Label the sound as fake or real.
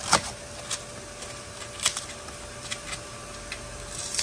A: real